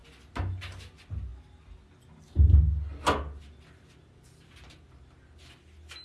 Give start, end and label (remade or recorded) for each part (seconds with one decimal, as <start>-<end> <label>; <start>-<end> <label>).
0.0-6.0 recorded